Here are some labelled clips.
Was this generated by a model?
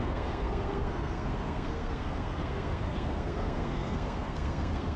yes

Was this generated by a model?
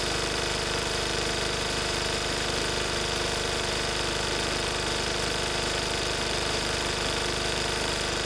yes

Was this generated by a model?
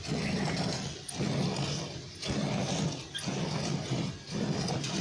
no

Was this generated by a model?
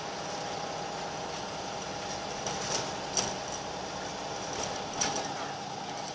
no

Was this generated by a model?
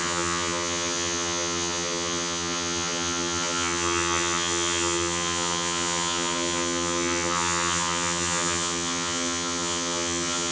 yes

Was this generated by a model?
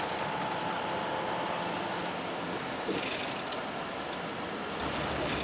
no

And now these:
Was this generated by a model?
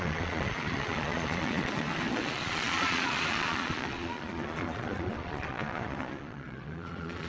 yes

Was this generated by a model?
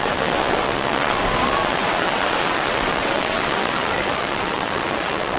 yes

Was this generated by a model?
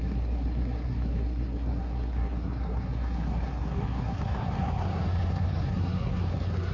yes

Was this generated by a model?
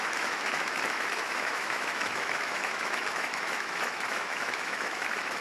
yes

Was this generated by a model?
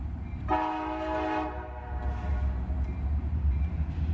yes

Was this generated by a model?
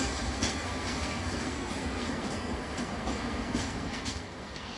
yes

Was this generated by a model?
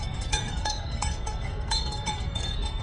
yes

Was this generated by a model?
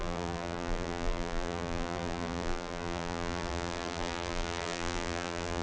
yes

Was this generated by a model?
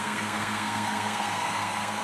yes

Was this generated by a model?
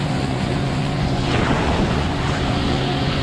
yes